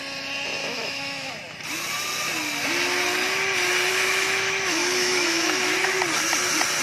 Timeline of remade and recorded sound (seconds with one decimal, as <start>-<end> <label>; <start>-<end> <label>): 0.0-0.6 recorded; 0.6-1.3 remade; 1.3-3.9 recorded; 3.9-6.0 remade; 6.0-6.8 recorded